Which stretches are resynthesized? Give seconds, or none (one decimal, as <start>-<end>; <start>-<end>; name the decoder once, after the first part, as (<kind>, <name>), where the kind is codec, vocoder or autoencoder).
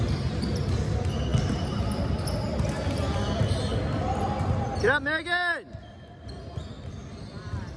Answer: none